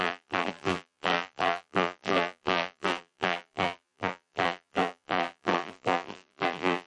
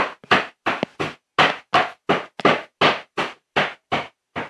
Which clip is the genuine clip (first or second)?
second